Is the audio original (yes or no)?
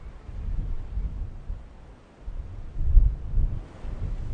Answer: yes